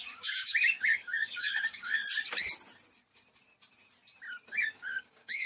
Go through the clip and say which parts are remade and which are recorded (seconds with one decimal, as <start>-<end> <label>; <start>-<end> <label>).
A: 0.0-2.0 remade; 2.0-4.5 recorded; 4.5-5.5 remade